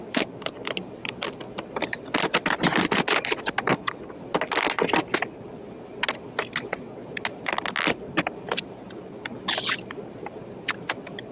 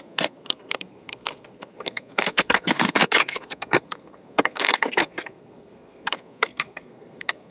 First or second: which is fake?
second